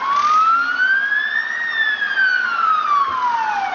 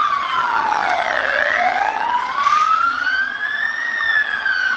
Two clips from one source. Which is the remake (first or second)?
second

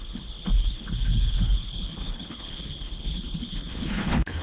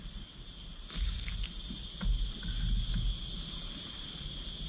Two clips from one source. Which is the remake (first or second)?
first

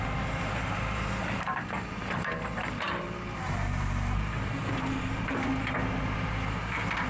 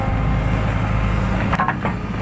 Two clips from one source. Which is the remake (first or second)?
first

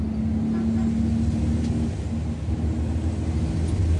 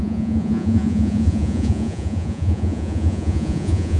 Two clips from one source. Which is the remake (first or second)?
second